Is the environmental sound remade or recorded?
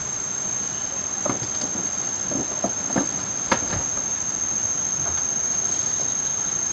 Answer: recorded